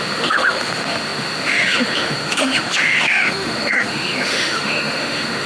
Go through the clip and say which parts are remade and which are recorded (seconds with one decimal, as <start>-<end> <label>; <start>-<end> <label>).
0.0-5.5 remade